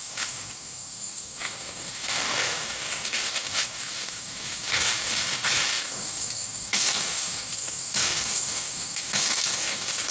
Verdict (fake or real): fake